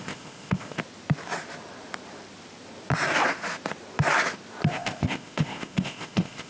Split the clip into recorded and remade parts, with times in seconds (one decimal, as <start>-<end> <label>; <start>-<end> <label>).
0.0-0.8 remade; 0.8-4.7 recorded; 4.7-6.5 remade